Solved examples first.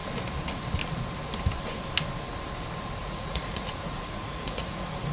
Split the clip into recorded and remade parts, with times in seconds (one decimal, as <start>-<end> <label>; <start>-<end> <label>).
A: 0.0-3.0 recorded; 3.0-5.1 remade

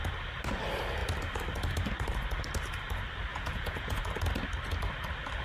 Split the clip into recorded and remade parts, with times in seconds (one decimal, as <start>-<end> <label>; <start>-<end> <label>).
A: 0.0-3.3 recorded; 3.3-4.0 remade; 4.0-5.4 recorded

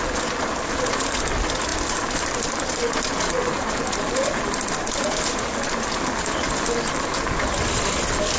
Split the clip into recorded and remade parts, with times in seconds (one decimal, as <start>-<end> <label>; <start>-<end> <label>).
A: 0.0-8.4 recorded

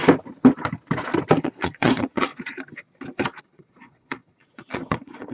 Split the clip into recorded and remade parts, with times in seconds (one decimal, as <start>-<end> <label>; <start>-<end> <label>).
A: 0.0-1.4 recorded; 1.4-2.3 remade; 2.3-3.4 recorded; 3.4-5.3 remade

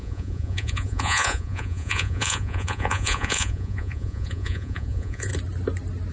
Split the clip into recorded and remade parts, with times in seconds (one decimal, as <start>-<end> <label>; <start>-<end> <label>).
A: 0.0-5.3 remade; 5.3-6.1 recorded